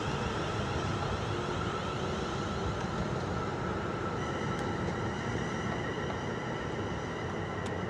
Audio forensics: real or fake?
real